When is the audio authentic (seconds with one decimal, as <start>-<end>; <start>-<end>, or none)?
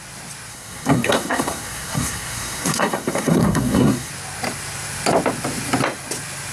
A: 0.0-0.5; 4.1-6.5